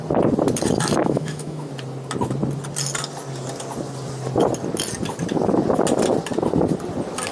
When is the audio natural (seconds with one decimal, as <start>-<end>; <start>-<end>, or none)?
0.0-1.0; 1.7-7.3